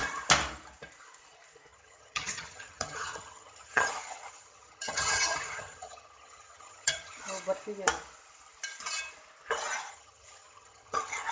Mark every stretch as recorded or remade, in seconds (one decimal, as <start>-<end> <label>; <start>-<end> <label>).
0.0-1.7 recorded; 1.7-7.2 remade; 7.2-9.9 recorded; 9.9-11.3 remade